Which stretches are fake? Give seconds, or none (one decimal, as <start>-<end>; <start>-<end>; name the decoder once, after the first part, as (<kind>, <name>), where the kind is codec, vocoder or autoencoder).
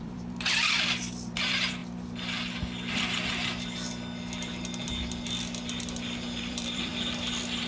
0.0-1.8 (vocoder, BigVGAN v2); 6.4-6.9